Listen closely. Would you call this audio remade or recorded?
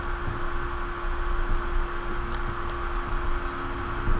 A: recorded